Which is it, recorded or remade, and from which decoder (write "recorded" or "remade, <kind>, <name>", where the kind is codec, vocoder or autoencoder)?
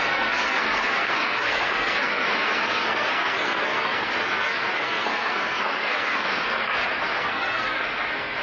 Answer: remade, codec, SNAC